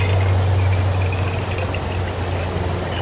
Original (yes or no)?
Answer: yes